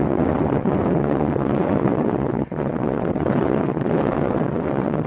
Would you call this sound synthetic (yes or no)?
yes